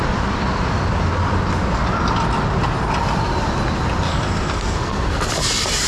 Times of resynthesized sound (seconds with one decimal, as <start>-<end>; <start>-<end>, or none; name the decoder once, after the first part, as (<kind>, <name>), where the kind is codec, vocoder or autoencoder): 4.1-5.3 (codec, SNAC)